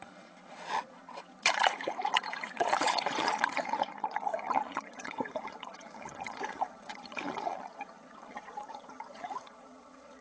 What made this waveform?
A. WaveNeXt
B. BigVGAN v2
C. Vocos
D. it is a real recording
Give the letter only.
C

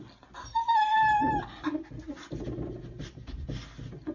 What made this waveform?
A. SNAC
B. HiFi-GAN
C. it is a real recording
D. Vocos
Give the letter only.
C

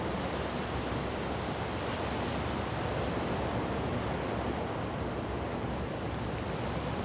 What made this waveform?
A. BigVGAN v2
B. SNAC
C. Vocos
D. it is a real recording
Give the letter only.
D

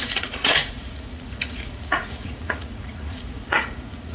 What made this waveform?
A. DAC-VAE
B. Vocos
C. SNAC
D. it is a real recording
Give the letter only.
B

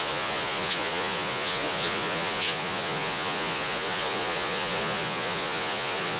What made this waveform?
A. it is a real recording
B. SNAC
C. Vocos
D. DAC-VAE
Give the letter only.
C